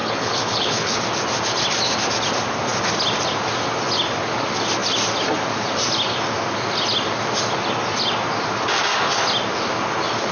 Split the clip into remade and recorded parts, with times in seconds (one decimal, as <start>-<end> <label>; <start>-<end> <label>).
0.0-1.0 remade; 1.0-10.3 recorded

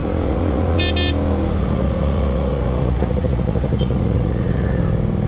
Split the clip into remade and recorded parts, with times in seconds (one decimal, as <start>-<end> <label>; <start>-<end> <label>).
0.0-0.8 remade; 0.8-1.6 recorded; 1.6-4.8 remade; 4.8-5.3 recorded

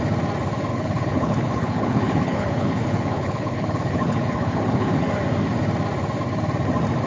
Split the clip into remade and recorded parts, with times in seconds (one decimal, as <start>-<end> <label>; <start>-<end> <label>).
0.0-0.7 recorded; 0.7-5.0 remade; 5.0-7.1 recorded

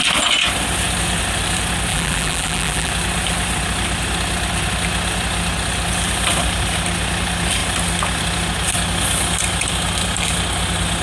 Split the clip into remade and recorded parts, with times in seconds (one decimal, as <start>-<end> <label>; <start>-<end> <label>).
0.0-1.9 recorded; 1.9-2.9 remade; 2.9-11.0 recorded

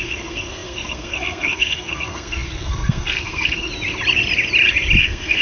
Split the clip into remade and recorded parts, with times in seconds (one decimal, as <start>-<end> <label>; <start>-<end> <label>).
0.0-3.7 remade; 3.7-5.0 recorded; 5.0-5.4 remade

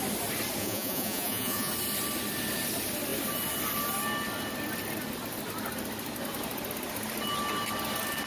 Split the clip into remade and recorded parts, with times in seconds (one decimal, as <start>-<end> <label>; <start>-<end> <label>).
0.0-0.6 recorded; 0.6-1.7 remade; 1.7-8.3 recorded